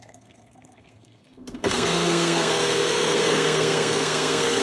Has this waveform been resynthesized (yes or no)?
yes